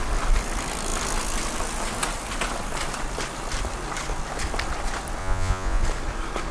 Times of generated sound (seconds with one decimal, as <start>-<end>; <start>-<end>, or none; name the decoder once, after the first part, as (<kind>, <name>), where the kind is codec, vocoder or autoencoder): 5.2-5.8 (vocoder, Vocos)